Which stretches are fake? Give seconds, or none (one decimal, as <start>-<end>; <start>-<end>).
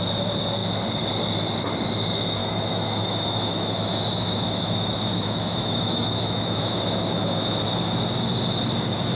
2.4-7.6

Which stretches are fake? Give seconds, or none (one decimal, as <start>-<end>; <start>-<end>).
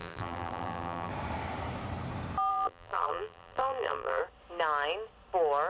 0.0-1.1; 2.5-4.2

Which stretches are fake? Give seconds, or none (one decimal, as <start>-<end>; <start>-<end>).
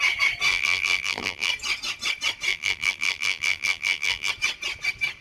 0.5-1.5; 2.5-4.3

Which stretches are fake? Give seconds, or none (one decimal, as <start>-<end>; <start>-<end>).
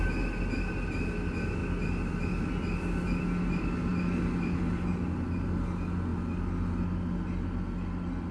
none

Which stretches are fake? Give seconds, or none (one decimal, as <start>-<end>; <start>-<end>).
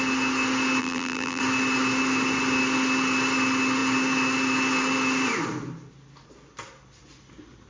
0.8-1.4